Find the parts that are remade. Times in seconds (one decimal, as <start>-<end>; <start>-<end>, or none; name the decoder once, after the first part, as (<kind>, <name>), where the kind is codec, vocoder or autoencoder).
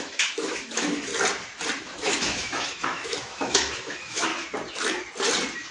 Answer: 0.0-1.1 (autoencoder, DAC-VAE); 1.8-4.3